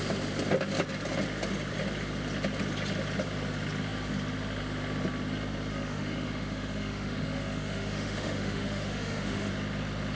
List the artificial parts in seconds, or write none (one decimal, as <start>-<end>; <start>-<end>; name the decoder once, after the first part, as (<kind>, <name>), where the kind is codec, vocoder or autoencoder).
5.7-9.5 (autoencoder, DAC-VAE)